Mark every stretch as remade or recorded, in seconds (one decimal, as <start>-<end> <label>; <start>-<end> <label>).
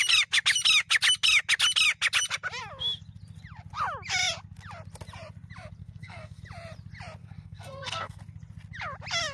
0.0-5.8 recorded; 5.8-6.4 remade; 6.4-7.2 recorded; 7.2-8.2 remade; 8.2-9.3 recorded